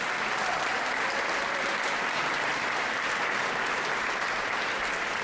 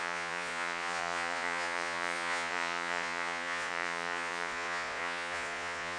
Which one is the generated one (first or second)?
second